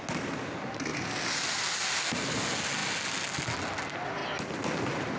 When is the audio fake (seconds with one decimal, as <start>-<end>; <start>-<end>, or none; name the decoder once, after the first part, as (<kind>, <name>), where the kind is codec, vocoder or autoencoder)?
none